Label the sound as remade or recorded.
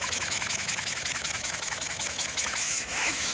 remade